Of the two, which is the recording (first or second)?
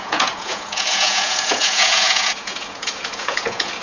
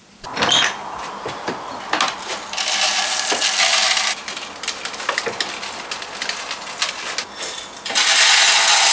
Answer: second